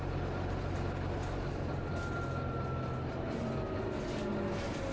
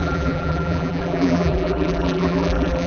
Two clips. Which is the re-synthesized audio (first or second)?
second